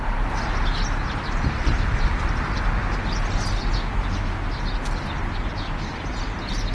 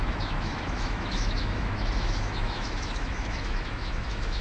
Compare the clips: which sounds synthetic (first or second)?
second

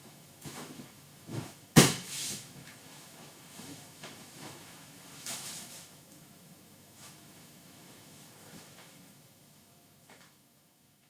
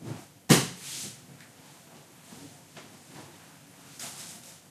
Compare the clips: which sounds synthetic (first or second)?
first